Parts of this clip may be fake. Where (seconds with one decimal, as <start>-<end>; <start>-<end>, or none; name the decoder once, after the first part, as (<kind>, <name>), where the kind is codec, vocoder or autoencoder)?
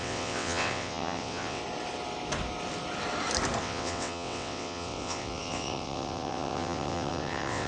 0.0-1.6 (vocoder, WaveNeXt); 3.6-7.7